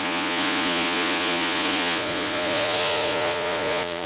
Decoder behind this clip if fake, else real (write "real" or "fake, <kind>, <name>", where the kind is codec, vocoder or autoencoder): fake, vocoder, Vocos